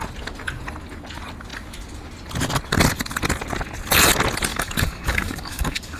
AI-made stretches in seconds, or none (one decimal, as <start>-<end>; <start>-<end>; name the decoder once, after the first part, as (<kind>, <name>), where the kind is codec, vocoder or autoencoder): 4.5-6.0 (codec, DAC)